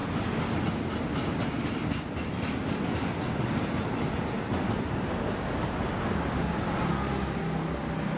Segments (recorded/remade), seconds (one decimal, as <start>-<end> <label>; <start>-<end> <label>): 0.0-8.2 recorded